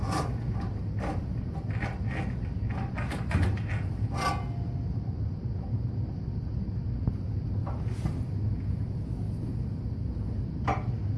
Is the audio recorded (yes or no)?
yes